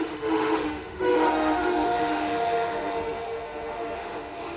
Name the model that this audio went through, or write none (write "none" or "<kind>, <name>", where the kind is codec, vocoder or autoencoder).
autoencoder, DAC-VAE